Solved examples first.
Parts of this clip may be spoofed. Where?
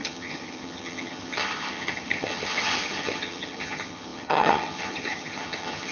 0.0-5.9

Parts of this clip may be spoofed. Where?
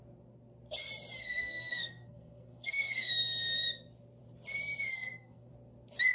1.2-3.1; 4.9-5.5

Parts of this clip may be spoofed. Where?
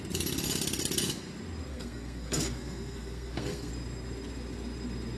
1.7-3.7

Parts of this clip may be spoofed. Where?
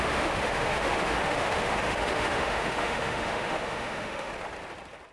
0.0-4.3